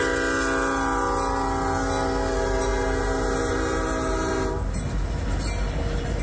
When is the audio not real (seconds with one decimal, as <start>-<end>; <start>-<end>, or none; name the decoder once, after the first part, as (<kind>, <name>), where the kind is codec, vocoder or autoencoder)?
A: none